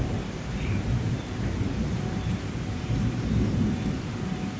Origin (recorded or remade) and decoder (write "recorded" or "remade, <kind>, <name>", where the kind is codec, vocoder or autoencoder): remade, vocoder, BigVGAN v2